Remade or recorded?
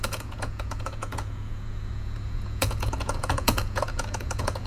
remade